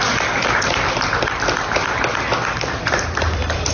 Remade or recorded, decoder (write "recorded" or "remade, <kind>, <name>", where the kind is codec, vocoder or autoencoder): remade, vocoder, BigVGAN v2